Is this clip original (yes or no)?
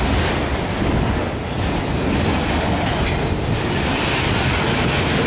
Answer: yes